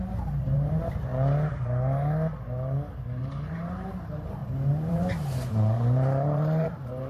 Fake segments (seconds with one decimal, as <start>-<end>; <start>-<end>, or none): 0.0-1.1; 3.2-4.4; 4.9-7.1